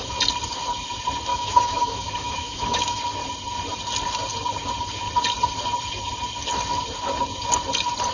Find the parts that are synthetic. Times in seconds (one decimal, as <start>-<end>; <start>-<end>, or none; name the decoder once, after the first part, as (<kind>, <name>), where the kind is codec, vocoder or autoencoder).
1.3-3.0 (autoencoder, DAC-VAE)